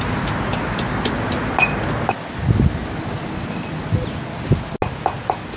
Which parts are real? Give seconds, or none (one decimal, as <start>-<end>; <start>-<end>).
0.0-5.6